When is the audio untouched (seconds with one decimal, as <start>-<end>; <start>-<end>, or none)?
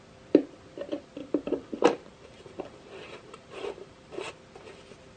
0.0-1.2; 4.3-5.2